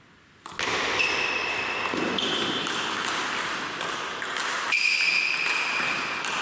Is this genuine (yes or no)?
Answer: yes